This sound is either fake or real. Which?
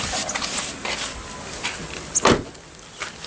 real